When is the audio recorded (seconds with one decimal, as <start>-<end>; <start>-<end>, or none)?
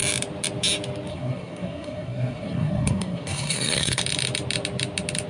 0.0-1.1; 4.0-5.3